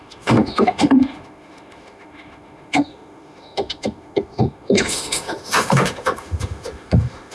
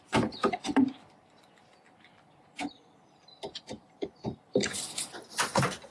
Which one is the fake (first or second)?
first